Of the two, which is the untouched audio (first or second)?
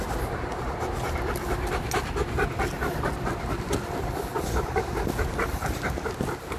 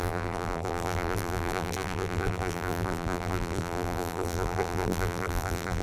first